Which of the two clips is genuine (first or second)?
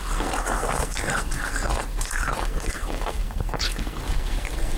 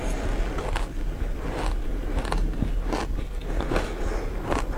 second